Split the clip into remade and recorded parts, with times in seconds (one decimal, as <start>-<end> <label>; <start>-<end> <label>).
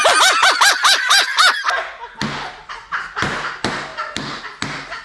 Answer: 0.0-5.0 recorded